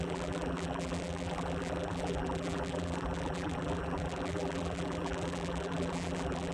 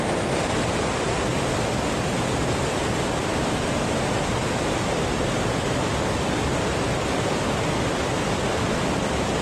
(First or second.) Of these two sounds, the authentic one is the second